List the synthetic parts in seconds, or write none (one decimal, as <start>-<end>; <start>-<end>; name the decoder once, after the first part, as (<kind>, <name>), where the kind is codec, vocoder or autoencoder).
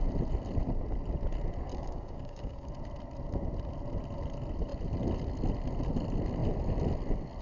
1.7-2.7 (codec, DAC)